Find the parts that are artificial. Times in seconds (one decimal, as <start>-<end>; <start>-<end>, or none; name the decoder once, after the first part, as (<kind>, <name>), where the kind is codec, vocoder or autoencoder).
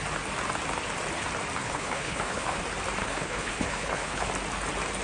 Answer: 1.6-2.6 (codec, HILCodec); 3.0-4.3